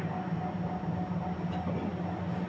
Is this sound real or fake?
real